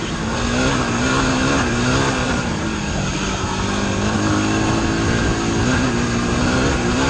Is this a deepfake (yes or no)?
no